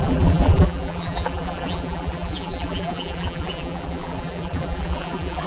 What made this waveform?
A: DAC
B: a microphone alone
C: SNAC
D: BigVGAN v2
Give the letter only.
D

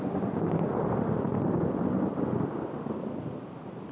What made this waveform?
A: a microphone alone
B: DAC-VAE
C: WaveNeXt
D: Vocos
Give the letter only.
A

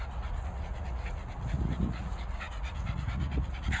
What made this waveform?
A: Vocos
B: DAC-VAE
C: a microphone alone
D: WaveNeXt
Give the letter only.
A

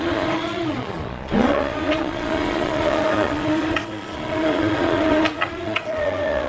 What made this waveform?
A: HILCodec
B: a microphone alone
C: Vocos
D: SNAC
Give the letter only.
C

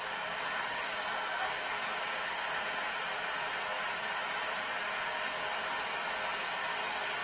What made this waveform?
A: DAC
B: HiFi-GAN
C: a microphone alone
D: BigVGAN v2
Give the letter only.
C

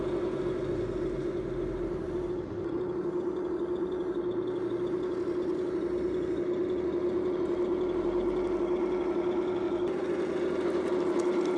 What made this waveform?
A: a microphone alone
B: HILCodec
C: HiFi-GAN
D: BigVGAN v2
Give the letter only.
A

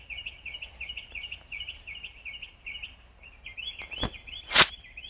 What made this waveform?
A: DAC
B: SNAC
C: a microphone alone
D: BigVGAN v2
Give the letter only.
C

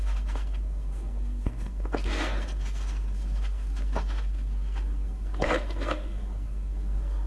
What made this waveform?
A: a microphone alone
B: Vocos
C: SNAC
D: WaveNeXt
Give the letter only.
C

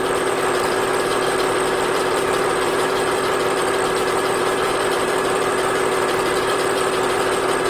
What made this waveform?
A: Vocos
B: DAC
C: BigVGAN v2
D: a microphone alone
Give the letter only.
C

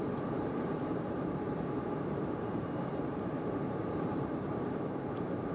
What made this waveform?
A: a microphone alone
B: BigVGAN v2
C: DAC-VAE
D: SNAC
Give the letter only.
B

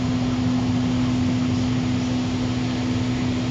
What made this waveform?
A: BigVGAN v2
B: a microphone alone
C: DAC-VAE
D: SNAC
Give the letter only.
B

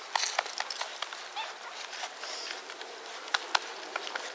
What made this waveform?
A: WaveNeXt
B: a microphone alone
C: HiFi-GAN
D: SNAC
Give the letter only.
B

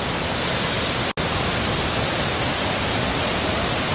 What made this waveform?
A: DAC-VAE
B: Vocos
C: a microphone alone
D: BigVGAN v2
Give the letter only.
C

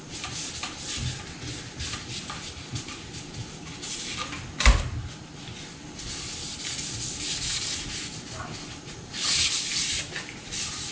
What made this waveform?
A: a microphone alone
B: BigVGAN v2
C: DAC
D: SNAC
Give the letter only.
A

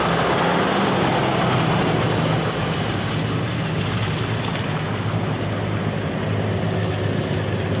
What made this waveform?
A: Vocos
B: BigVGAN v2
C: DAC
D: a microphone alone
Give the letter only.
D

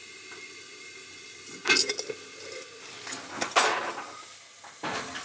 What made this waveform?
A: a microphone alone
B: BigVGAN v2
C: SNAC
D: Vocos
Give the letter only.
A